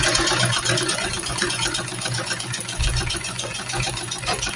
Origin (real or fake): fake